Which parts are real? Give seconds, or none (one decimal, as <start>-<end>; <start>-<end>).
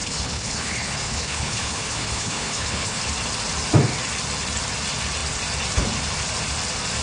3.0-7.0